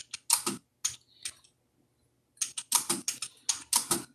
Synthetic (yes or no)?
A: no